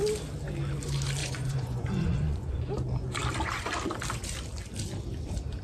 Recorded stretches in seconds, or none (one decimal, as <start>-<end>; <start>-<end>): 0.0-1.2; 2.7-5.6